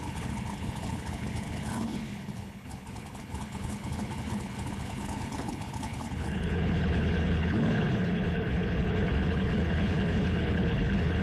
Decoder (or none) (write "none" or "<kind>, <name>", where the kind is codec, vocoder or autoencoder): codec, HILCodec